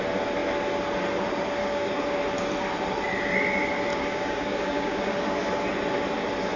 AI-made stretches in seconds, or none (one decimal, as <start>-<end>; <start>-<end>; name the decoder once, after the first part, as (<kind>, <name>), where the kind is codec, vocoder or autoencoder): 1.6-2.2 (codec, DAC); 3.9-5.2